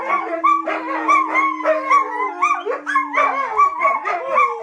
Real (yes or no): yes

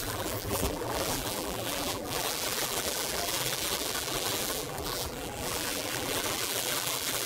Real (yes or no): no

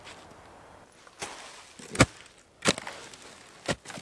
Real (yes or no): yes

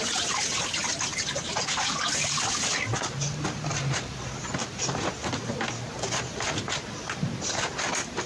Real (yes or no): yes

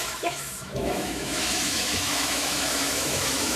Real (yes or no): no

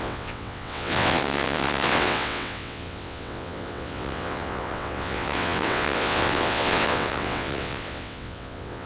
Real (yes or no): no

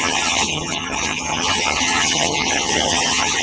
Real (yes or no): no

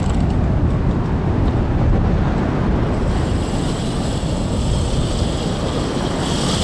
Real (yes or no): yes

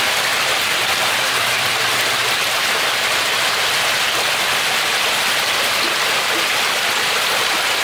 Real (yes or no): no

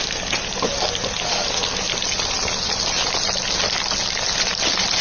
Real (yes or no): yes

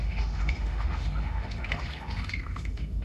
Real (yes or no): no